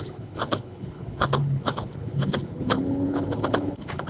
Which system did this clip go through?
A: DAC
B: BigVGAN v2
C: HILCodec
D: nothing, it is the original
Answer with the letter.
C